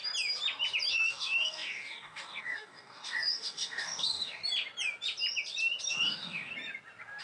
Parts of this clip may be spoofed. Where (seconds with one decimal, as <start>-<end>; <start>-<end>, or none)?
0.9-4.4; 5.9-6.5